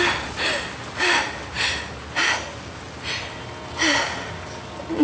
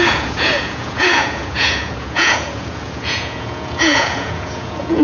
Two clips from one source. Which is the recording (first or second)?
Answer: first